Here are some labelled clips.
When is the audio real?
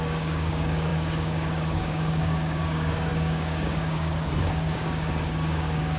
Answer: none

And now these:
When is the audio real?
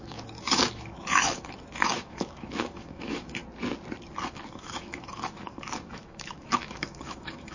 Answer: 3.4-4.3